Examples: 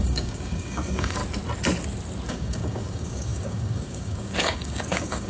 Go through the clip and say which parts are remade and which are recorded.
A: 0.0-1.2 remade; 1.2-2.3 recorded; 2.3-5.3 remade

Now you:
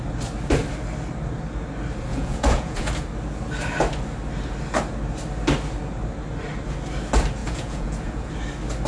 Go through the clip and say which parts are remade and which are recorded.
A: 0.0-2.1 recorded; 2.1-2.9 remade; 2.9-7.4 recorded; 7.4-8.3 remade; 8.3-8.9 recorded